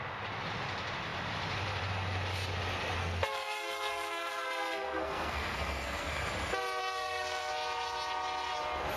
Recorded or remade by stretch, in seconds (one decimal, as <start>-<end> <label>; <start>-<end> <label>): 0.0-3.0 recorded; 3.0-6.3 remade; 6.3-6.8 recorded; 6.8-7.5 remade; 7.5-9.0 recorded